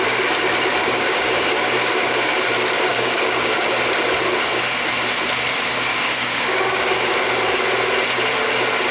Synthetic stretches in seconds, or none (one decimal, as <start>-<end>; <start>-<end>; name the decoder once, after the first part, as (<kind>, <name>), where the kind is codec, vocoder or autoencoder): 0.7-2.5 (codec, DAC); 2.9-3.6; 5.9-7.1